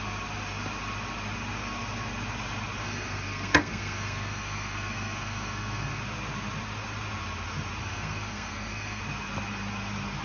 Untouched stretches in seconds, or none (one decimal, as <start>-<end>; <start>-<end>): 0.0-2.8; 6.0-7.8; 9.0-10.2